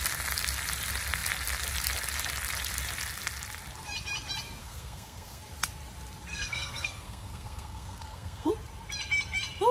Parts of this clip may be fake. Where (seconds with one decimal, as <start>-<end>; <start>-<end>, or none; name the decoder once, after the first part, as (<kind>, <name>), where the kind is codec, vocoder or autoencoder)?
4.6-5.4 (codec, SNAC); 6.3-8.5